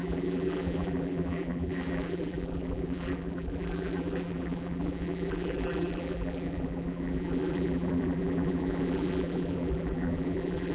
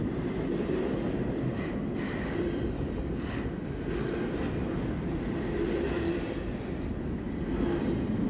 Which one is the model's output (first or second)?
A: first